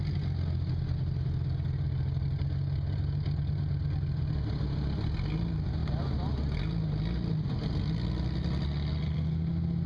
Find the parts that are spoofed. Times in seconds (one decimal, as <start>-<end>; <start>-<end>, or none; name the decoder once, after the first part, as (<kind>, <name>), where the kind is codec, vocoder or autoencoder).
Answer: none